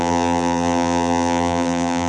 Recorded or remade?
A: remade